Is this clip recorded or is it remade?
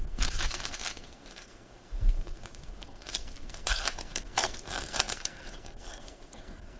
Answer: remade